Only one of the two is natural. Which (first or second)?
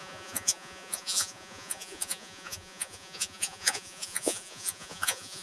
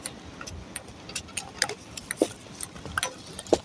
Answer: second